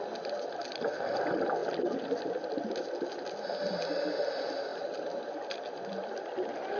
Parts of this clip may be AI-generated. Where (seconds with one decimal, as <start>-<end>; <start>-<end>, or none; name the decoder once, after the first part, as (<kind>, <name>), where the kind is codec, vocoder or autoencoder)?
none